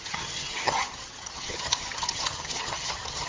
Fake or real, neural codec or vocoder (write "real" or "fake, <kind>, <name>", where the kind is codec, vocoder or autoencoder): fake, vocoder, HiFi-GAN